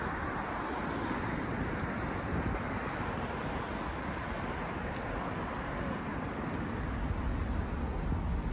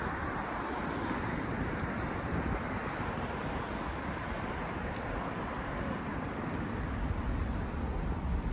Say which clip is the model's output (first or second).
second